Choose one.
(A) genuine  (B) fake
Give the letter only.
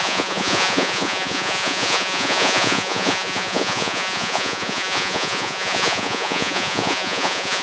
B